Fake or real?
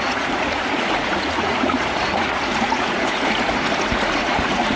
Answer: fake